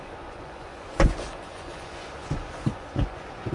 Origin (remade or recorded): remade